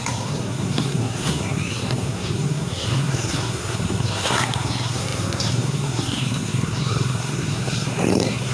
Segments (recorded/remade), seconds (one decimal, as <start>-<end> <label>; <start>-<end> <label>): 0.0-8.5 remade